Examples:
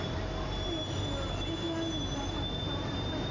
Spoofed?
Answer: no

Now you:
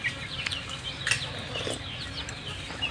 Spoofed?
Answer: no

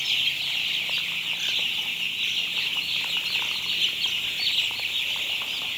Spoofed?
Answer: no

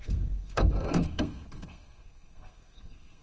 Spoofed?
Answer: yes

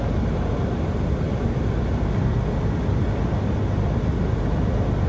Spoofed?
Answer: no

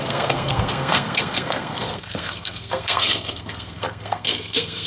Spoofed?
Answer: yes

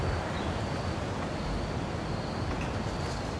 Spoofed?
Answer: no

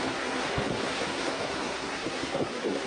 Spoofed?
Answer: yes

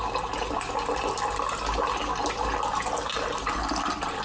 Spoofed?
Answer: no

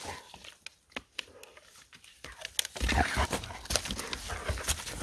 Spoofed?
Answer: no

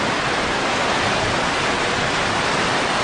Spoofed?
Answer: no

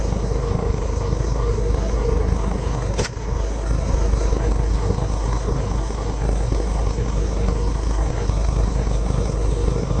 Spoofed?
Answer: yes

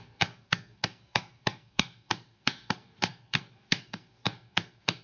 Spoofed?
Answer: yes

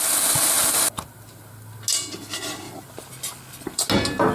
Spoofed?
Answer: no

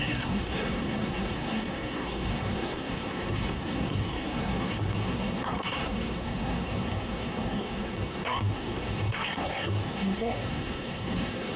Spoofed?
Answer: yes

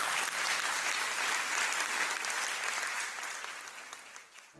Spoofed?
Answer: no